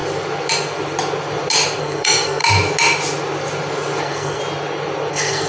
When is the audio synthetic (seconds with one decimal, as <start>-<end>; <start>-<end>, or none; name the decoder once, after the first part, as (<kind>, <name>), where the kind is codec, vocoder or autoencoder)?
1.8-2.4 (codec, SNAC); 4.0-4.4; 5.1-5.5